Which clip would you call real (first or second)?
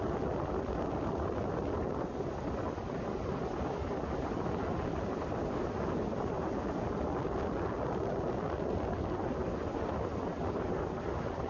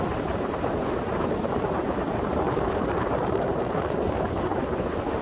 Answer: first